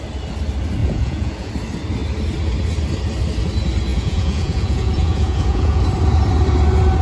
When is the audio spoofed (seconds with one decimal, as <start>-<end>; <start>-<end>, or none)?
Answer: 0.8-1.5; 3.9-5.8